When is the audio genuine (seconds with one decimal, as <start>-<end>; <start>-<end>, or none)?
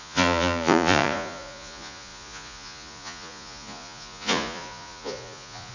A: none